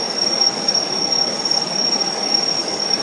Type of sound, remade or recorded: remade